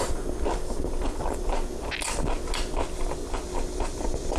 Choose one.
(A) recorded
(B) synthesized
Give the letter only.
A